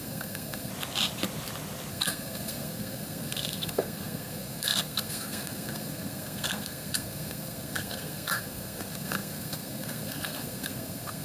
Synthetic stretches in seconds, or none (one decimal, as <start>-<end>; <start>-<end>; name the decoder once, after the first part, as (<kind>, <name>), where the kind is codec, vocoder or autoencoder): 0.0-0.7 (codec, SNAC); 1.9-11.2